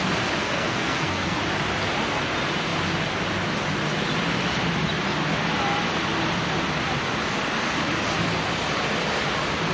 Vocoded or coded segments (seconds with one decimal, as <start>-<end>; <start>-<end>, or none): 0.4-1.4